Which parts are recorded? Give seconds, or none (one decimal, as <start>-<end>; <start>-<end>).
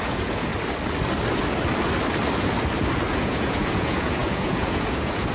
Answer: 0.5-3.1